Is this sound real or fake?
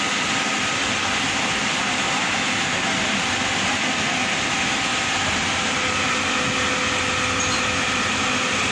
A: real